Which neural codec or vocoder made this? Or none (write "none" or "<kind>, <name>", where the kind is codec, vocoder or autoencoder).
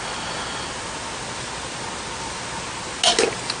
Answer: none